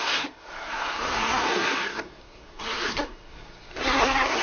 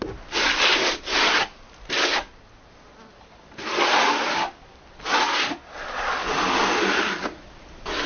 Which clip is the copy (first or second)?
first